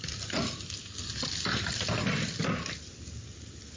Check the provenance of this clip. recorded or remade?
recorded